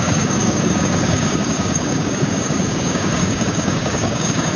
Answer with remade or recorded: remade